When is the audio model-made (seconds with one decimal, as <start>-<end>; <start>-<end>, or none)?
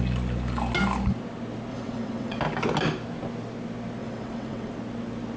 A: 1.7-2.4; 4.0-4.7